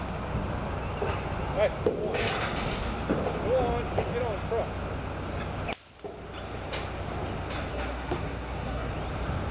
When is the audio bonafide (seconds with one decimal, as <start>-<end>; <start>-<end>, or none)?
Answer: 0.0-7.7; 8.9-9.5